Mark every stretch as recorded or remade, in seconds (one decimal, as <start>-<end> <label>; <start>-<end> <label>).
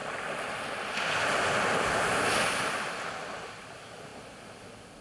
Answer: 0.0-5.0 recorded